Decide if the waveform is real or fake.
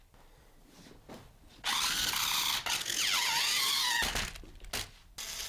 real